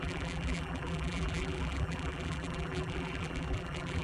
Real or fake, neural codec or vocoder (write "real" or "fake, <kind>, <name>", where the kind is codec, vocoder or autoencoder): fake, vocoder, BigVGAN v2